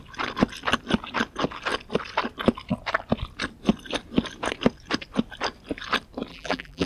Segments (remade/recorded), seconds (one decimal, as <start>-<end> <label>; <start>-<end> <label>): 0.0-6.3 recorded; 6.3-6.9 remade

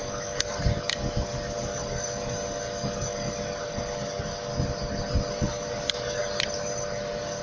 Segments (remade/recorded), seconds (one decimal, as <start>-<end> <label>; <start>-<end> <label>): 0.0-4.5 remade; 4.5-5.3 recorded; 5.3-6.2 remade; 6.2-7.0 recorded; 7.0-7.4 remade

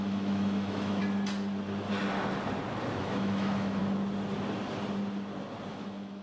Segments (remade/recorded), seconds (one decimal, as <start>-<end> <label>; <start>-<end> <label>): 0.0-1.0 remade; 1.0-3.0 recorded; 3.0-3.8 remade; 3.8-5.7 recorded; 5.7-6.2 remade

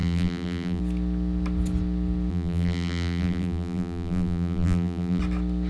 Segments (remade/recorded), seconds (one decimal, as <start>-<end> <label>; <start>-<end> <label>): 0.0-0.8 remade; 0.8-2.3 recorded; 2.3-5.2 remade; 5.2-5.7 recorded

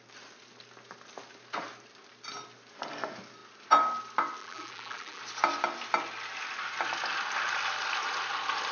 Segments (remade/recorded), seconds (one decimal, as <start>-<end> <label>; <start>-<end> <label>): 0.0-4.4 recorded; 4.4-5.2 remade; 5.2-8.7 recorded